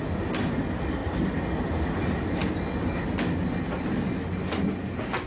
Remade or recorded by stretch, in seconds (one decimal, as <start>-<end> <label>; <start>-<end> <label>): 0.0-5.3 recorded